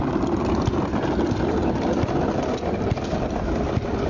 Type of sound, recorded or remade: recorded